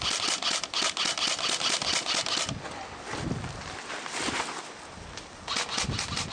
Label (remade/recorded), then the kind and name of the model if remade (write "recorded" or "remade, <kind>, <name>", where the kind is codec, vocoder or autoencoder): recorded